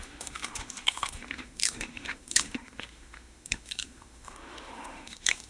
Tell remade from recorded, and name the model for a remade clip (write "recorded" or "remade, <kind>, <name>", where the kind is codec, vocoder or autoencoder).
remade, autoencoder, DAC-VAE